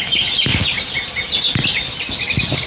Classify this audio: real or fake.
real